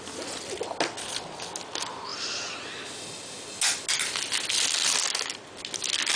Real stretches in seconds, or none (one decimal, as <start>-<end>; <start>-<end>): 0.0-6.2